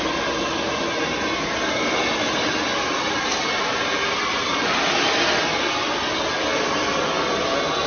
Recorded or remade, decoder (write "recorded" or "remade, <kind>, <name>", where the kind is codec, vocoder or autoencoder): recorded